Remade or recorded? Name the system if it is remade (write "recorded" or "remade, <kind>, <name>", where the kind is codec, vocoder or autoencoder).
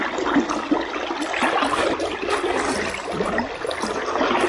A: recorded